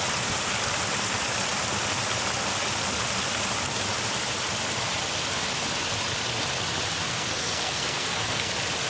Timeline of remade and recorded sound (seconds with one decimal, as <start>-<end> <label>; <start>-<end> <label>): 0.0-7.1 recorded; 7.1-8.5 remade; 8.5-8.9 recorded